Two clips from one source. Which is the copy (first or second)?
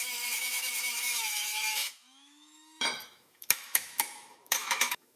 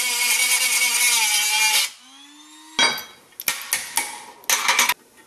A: first